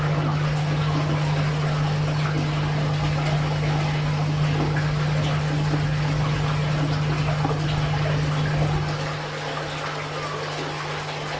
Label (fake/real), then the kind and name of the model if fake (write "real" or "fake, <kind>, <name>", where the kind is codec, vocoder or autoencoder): real